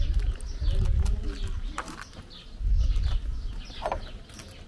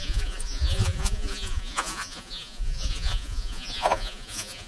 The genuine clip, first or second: first